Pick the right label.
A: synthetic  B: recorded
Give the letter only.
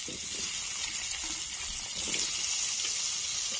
B